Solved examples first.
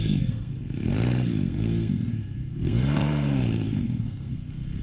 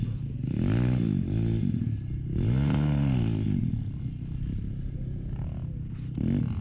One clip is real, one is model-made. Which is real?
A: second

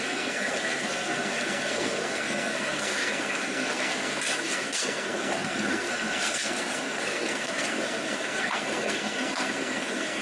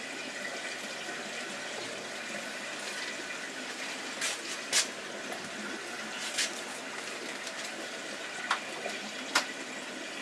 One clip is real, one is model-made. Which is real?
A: second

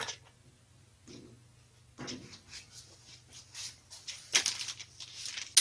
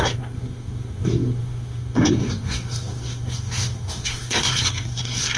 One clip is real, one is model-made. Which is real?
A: first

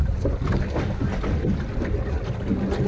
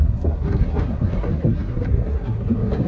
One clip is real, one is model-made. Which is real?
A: first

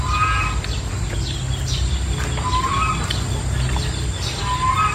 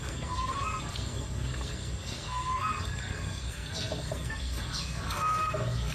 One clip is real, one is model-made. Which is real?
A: first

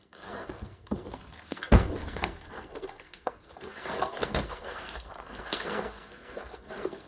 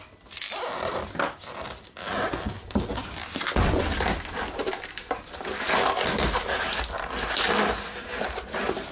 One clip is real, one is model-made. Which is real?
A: second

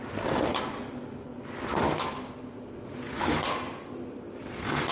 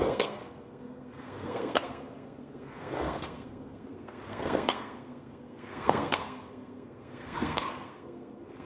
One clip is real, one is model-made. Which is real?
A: first